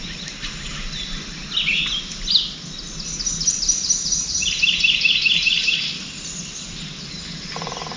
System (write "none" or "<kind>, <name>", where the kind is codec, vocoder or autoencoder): none